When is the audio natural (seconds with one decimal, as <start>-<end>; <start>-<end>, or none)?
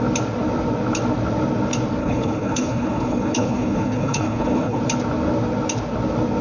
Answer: 0.0-2.0; 4.8-6.4